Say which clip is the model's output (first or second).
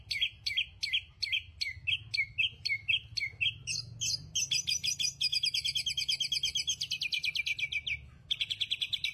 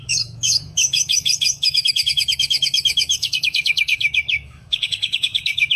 second